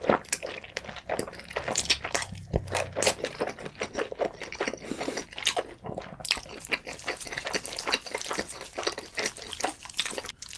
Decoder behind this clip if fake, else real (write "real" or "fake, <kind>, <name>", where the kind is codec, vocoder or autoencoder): real